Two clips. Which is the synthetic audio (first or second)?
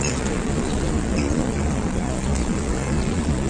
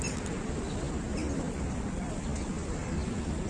first